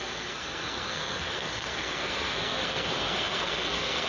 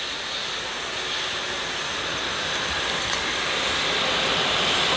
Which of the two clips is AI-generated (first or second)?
first